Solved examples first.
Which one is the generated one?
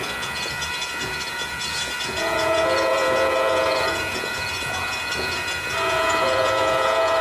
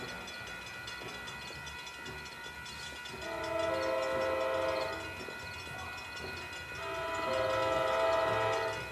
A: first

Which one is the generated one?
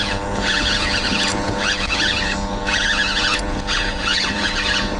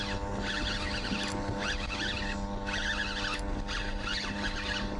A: first